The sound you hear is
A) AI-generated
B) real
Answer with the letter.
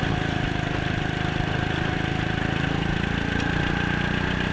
B